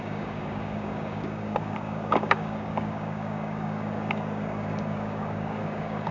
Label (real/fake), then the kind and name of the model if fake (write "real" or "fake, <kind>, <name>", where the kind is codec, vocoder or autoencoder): fake, codec, DAC